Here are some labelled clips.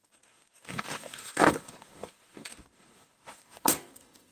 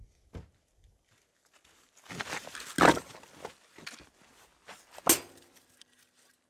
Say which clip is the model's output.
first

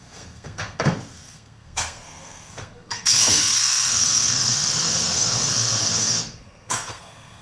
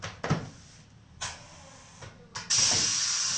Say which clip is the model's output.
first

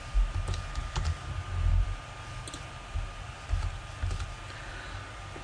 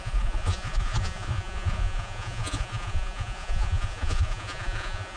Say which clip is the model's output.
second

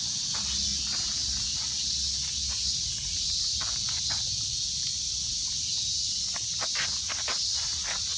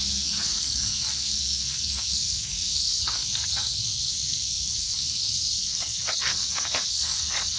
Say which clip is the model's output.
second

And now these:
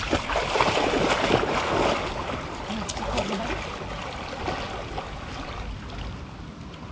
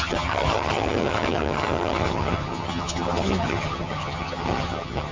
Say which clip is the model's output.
second